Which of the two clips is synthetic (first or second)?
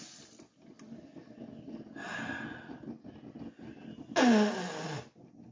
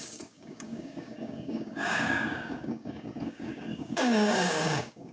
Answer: second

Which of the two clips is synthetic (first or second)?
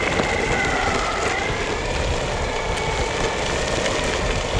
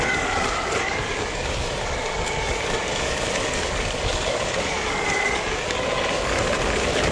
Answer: second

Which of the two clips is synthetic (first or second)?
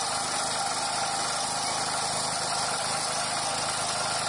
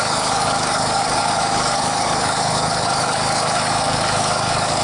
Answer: second